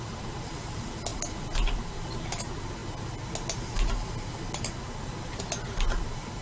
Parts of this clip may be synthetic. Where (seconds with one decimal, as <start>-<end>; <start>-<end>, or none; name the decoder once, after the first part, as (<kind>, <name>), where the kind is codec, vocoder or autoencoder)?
none